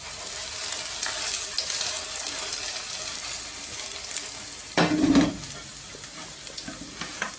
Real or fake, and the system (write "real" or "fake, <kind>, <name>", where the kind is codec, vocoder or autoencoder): real